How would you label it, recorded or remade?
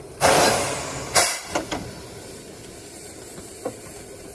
remade